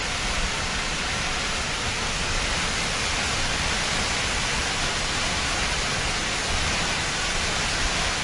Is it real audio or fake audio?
real